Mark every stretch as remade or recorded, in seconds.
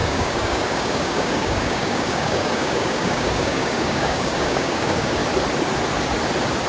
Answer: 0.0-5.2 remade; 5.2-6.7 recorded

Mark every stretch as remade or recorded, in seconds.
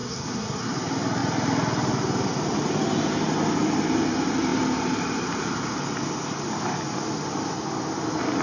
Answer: 0.0-0.7 remade; 0.7-8.4 recorded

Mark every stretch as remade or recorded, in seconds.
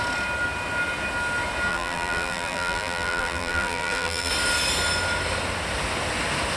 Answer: 0.0-1.7 recorded; 1.7-4.3 remade; 4.3-6.6 recorded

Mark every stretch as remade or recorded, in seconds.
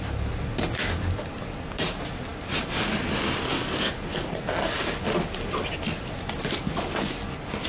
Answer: 0.0-7.7 recorded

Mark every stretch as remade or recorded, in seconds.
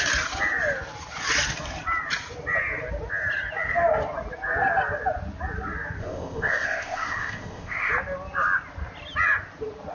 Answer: 0.0-6.0 recorded; 6.0-7.9 remade; 7.9-9.9 recorded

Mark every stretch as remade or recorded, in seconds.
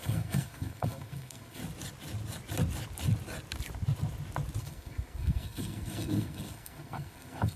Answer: 0.0-1.6 remade; 1.6-4.6 recorded; 4.6-7.6 remade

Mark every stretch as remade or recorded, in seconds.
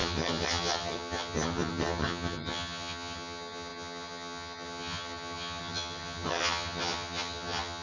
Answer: 0.0-7.8 remade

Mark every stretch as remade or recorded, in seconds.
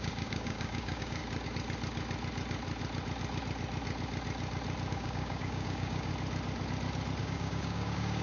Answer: 0.0-1.2 remade; 1.2-4.9 recorded; 4.9-6.1 remade; 6.1-7.2 recorded; 7.2-8.2 remade